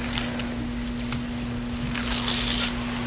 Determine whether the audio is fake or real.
real